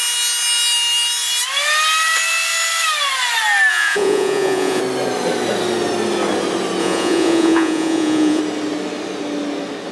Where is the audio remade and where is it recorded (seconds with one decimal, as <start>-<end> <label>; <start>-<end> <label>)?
0.0-3.7 recorded; 3.7-4.8 remade; 4.8-6.8 recorded; 6.8-8.4 remade; 8.4-9.9 recorded